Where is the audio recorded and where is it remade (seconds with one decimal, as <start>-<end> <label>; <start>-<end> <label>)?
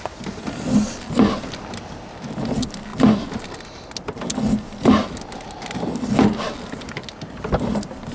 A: 0.0-8.1 recorded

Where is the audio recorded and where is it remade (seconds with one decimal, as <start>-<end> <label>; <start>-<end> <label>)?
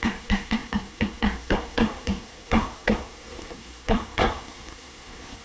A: 0.0-5.4 remade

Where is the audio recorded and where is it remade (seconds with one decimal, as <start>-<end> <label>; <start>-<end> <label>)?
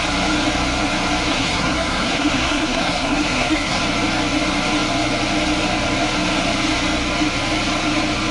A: 0.0-1.3 recorded; 1.3-3.8 remade; 3.8-8.3 recorded